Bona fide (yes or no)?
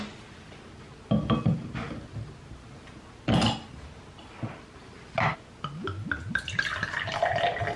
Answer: yes